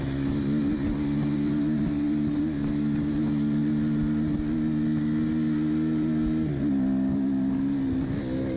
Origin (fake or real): real